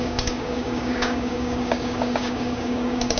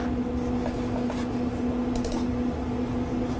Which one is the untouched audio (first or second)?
second